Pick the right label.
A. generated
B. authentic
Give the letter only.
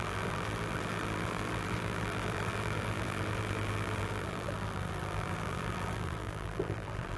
A